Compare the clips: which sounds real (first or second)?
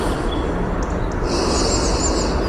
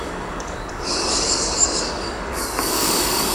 first